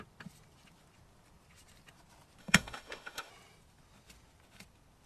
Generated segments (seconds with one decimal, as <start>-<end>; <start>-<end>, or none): 2.4-3.3